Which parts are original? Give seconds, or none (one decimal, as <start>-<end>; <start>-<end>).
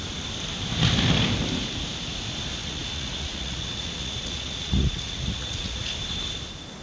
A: 0.0-2.6; 5.9-6.8